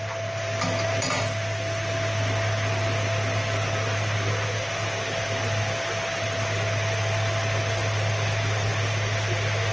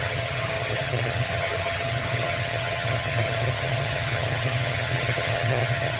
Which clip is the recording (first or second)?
first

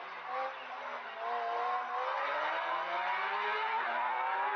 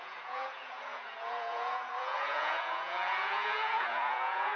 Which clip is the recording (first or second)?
first